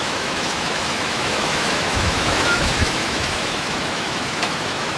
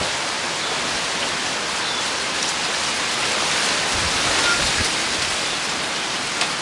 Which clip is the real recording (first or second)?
second